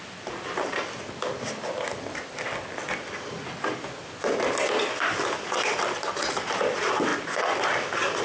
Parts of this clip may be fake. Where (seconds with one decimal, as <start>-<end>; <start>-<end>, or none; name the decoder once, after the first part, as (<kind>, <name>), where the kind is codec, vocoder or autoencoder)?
none